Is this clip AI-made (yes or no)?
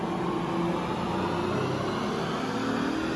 no